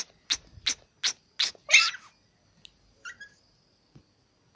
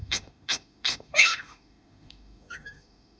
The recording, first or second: first